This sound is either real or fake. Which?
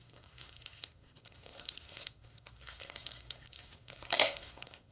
fake